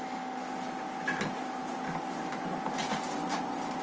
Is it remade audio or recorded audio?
recorded